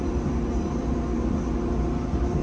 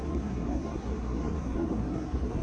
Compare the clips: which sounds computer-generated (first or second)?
second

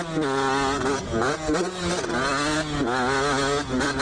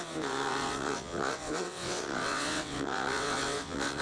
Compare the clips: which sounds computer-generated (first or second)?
second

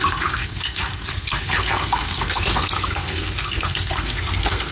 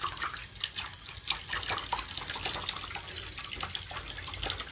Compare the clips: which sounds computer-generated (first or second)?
first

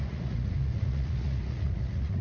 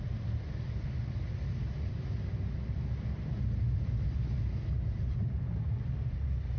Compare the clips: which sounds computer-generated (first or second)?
first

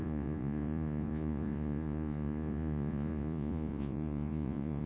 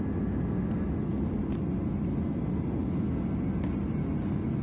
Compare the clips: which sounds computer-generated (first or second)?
first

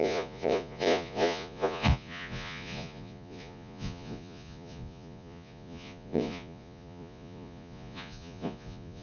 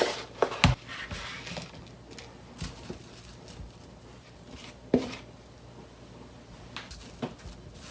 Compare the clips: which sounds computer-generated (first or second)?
first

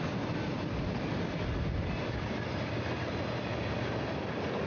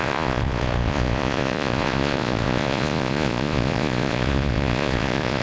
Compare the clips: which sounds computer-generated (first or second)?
second